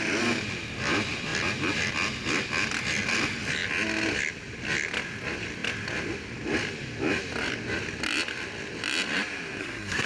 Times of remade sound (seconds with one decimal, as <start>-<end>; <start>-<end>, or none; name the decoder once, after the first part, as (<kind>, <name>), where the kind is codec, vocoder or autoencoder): 9.6-10.1 (codec, SNAC)